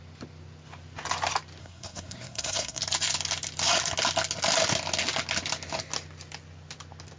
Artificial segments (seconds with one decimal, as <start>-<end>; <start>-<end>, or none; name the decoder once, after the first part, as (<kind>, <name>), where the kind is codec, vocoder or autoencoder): 1.6-2.8 (codec, SNAC)